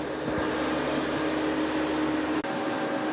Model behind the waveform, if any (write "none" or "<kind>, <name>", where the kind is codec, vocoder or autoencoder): none